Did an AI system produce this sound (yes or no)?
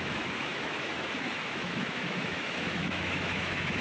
yes